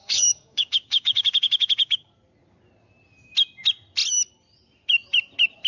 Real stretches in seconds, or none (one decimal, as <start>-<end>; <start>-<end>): 2.1-5.7